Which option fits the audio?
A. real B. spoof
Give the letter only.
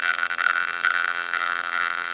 B